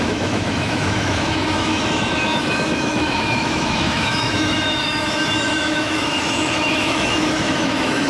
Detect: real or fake fake